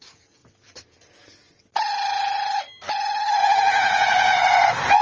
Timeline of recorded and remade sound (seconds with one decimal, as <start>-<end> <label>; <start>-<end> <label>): 0.0-0.4 remade; 0.4-3.4 recorded; 3.4-5.0 remade